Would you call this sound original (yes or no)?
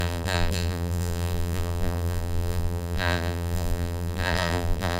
no